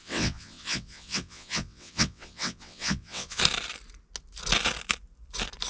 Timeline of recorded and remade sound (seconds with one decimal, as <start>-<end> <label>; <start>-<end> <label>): 0.0-3.4 remade; 3.4-5.7 recorded